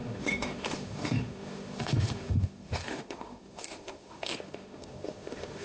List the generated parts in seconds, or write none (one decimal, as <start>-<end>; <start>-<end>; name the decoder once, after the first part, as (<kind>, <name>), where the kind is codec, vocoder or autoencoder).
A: 0.0-5.6 (autoencoder, DAC-VAE)